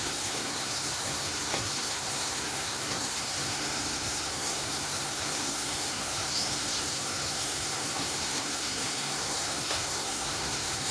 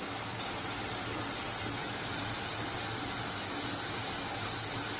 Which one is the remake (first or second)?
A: first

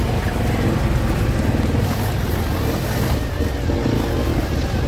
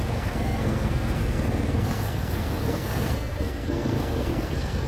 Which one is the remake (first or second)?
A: second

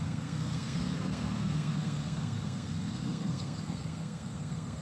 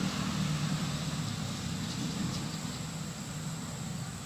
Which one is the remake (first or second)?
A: first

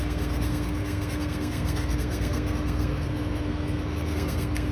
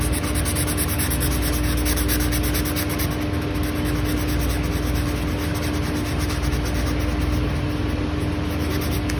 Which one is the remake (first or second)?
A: first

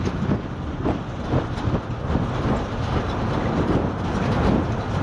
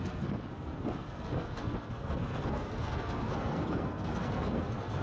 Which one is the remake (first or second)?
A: second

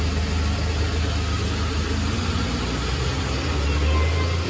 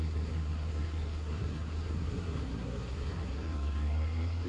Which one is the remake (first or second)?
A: second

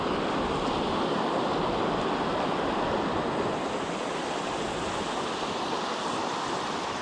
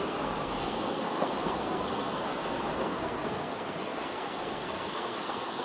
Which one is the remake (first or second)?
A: second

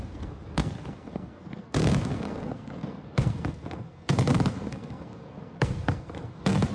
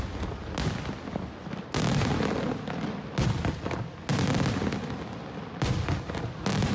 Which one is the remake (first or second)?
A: first